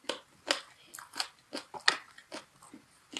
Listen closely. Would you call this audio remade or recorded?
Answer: recorded